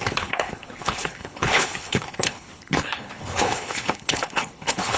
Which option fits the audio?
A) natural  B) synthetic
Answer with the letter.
B